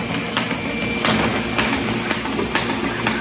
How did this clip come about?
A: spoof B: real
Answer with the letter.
B